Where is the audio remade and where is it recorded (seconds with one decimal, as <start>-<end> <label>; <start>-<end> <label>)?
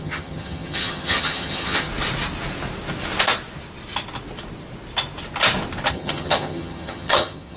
0.0-1.9 remade; 1.9-5.9 recorded; 5.9-7.6 remade